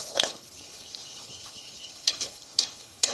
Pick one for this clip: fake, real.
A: fake